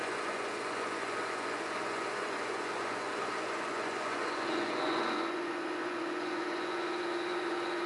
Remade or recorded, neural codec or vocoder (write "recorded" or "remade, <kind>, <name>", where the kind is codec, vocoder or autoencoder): remade, vocoder, Vocos